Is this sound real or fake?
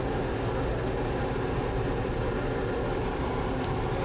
real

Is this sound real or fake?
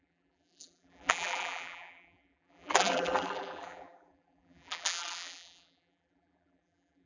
fake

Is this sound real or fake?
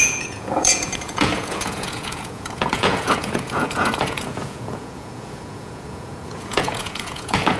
fake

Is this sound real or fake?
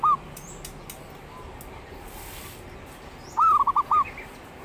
real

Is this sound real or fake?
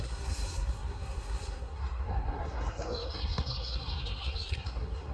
fake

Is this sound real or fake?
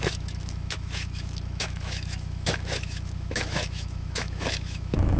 fake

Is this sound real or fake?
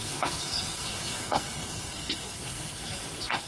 fake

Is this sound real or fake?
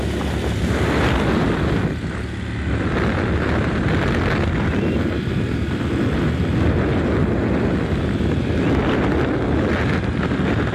real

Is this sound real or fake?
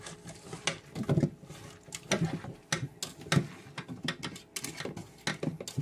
real